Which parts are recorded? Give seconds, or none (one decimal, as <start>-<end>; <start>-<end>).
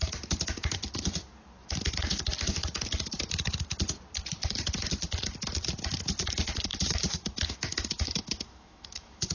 0.0-6.7